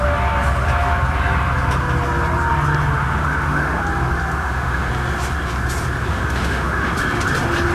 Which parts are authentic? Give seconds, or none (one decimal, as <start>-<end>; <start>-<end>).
0.0-3.0; 3.8-4.4; 4.9-6.1; 6.9-7.7

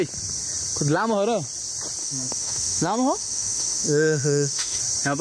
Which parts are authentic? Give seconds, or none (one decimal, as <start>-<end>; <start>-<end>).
0.0-2.0; 4.8-5.2

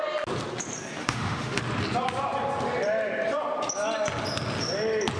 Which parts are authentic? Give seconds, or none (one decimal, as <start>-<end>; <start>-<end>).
0.0-1.0; 1.6-5.2

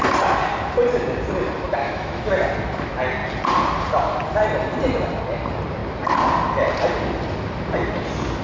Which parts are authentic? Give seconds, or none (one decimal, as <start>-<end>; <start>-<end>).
0.0-1.8; 2.3-8.4

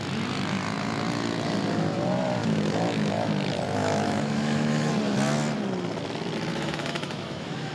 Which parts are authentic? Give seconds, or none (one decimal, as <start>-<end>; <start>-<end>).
0.0-2.4; 3.3-3.8; 4.9-6.5

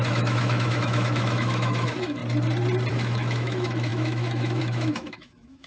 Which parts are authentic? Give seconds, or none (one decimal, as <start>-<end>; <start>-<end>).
2.2-2.9